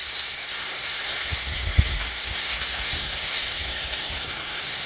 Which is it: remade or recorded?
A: remade